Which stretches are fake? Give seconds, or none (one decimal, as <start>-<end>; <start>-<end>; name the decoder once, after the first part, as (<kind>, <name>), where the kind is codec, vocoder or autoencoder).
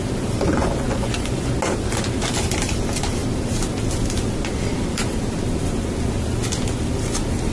0.6-1.5 (vocoder, Vocos)